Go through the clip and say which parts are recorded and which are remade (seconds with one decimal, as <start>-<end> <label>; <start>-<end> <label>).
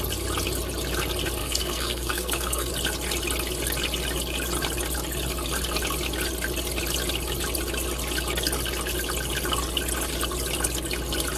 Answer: 0.0-1.4 recorded; 1.4-2.7 remade; 2.7-11.4 recorded